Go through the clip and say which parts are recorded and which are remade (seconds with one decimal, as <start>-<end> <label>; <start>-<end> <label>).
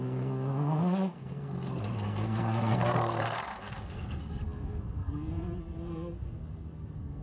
0.0-7.2 remade